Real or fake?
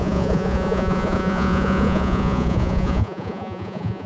fake